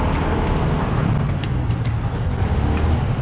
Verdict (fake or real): real